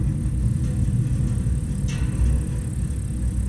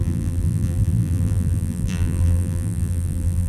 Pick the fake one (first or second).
second